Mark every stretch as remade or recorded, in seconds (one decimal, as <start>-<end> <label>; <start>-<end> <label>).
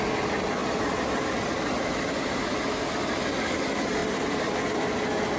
0.0-4.0 recorded; 4.0-4.6 remade; 4.6-5.4 recorded